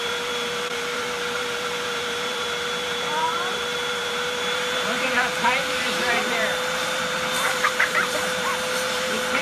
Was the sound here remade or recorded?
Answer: remade